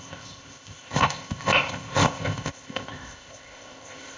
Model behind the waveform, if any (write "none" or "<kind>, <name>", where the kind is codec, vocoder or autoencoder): codec, ZipCodec